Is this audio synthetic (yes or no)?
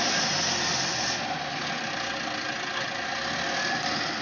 no